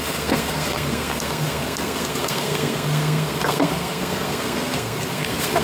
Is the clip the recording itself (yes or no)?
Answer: no